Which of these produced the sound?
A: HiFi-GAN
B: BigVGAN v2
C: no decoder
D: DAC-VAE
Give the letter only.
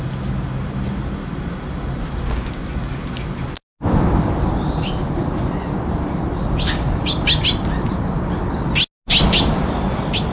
C